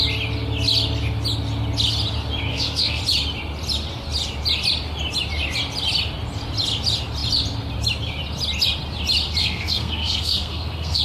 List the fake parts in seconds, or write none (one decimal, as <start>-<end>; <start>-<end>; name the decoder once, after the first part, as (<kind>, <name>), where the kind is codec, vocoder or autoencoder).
2.5-3.0 (codec, SNAC); 9.4-11.0